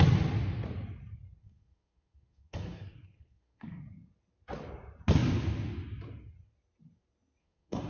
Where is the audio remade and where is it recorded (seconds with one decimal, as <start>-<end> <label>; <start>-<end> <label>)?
0.0-1.4 recorded; 1.4-3.8 remade; 3.8-7.4 recorded; 7.4-7.9 remade